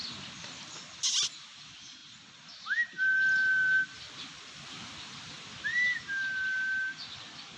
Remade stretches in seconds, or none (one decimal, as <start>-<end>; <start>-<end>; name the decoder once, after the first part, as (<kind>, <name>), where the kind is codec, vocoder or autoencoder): none